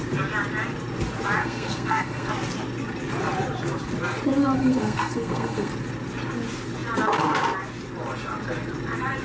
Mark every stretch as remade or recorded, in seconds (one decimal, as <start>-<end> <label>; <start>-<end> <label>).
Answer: 0.0-1.4 recorded; 1.4-2.3 remade; 2.3-4.4 recorded; 4.4-5.7 remade; 5.7-9.2 recorded